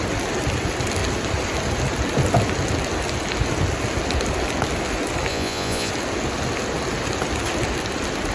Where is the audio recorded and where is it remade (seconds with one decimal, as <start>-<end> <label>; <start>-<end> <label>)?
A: 0.0-5.3 recorded; 5.3-5.9 remade; 5.9-8.3 recorded